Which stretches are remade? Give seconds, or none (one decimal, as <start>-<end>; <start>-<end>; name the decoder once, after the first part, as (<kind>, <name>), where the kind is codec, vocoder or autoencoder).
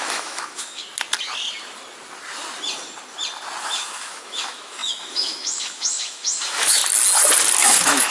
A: 0.0-0.8 (autoencoder, DAC-VAE); 3.6-6.8; 7.6-8.1